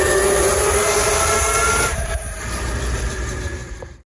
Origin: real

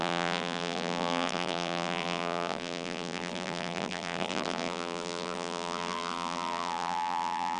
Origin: fake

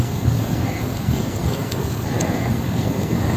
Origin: fake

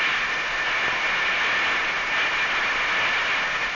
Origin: real